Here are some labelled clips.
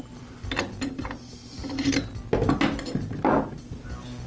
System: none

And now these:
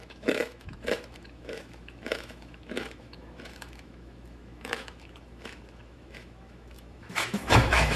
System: autoencoder, DAC-VAE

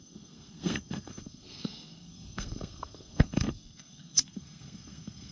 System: codec, SNAC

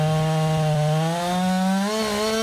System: none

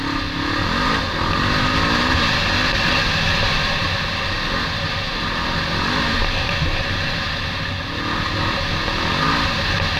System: none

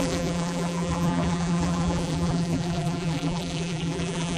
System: vocoder, BigVGAN v2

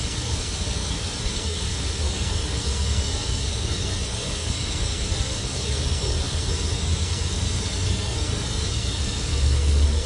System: codec, SNAC